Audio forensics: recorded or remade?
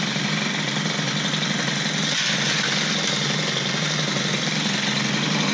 recorded